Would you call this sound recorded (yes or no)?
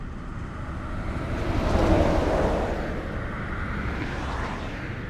yes